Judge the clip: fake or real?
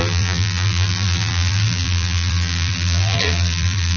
fake